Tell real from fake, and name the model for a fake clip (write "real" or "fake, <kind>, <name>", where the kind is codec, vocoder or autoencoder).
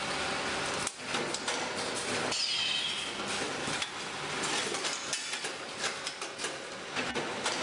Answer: real